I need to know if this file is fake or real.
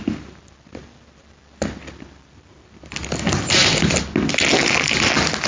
real